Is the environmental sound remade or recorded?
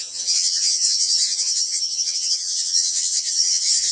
remade